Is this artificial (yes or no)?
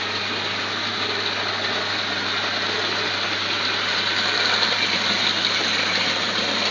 no